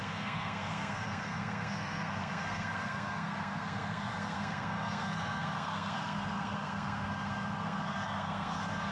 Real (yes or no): no